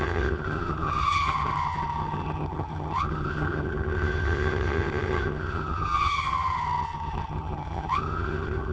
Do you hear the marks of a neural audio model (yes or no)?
yes